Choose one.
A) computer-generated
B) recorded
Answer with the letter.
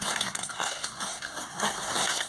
A